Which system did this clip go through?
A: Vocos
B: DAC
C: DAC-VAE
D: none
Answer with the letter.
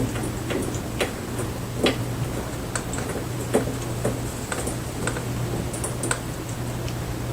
D